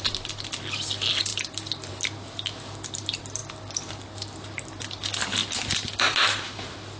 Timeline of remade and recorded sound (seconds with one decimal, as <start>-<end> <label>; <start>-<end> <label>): 0.0-7.0 recorded